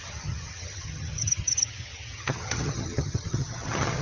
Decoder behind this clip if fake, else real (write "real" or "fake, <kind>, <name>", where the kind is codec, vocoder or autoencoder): fake, vocoder, HiFi-GAN